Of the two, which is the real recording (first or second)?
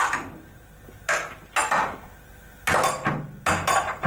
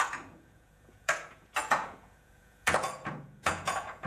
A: first